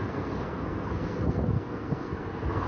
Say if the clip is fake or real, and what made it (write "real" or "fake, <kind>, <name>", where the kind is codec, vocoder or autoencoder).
fake, codec, SNAC